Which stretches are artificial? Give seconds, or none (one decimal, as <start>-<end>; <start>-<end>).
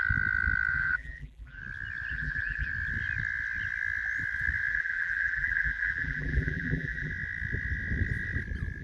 0.7-1.6; 2.1-2.7; 4.7-7.1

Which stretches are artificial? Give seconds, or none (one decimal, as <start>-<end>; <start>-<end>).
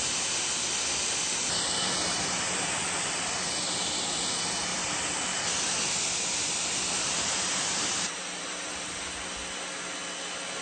4.7-9.1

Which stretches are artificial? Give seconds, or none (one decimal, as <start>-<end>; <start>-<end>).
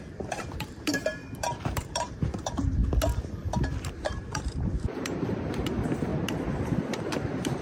0.0-2.8; 3.9-6.1; 6.8-7.6